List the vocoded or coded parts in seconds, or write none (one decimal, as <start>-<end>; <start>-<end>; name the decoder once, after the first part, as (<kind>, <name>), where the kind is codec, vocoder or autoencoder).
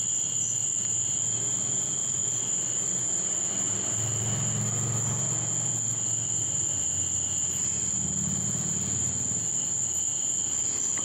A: none